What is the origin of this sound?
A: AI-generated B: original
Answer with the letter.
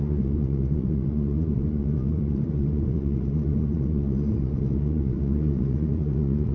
A